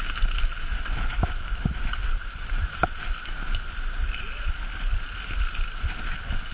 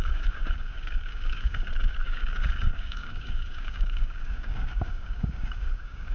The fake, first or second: second